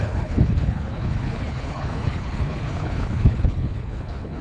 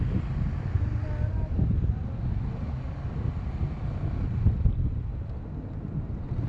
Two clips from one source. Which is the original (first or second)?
second